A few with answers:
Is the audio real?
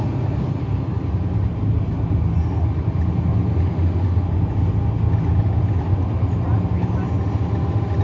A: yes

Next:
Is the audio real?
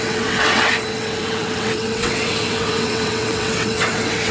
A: no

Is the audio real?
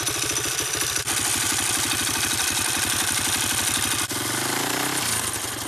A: yes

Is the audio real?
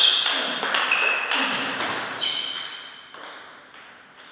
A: yes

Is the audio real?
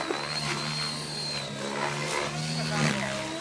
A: yes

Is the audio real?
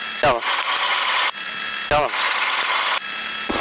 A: yes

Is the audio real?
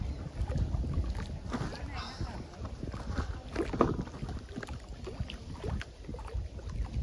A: yes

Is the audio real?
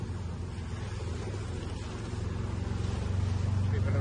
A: yes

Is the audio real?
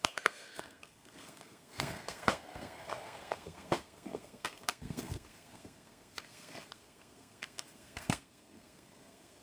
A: no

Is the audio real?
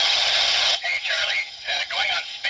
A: no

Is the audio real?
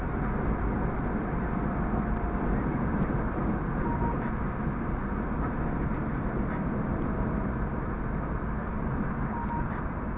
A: yes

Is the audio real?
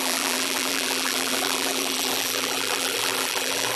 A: no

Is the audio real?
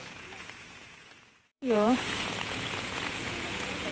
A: no